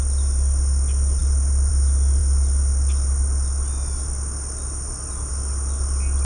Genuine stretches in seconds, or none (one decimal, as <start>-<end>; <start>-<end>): 0.0-6.2